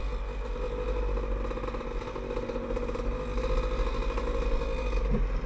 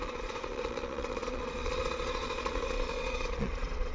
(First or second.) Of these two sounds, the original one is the first